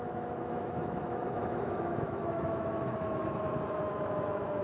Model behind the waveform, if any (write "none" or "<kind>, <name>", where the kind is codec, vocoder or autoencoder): autoencoder, DAC-VAE